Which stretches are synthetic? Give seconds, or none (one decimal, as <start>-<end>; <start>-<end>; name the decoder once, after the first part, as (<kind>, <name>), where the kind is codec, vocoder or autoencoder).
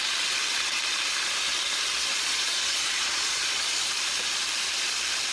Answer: 2.1-3.6 (vocoder, Vocos)